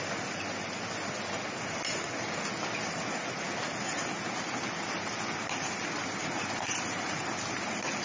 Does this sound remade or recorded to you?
recorded